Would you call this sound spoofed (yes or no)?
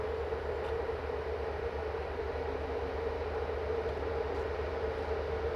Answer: no